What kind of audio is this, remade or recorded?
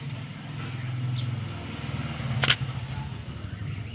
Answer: recorded